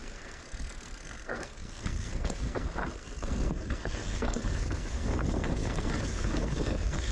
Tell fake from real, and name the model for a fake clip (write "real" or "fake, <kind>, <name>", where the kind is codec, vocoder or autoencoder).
fake, codec, SNAC